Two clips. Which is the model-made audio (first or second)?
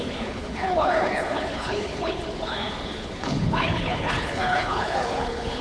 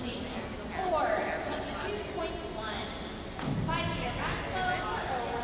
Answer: first